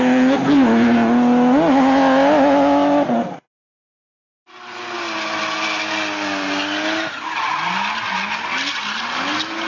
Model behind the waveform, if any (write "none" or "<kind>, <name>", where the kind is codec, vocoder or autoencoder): none